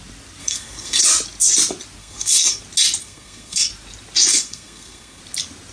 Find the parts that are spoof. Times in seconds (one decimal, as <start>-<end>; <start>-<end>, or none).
0.4-1.0; 2.0-2.6; 3.0-3.7; 4.3-5.2